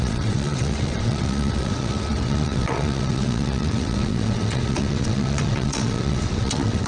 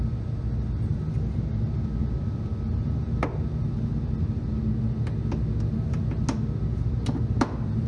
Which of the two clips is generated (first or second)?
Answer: first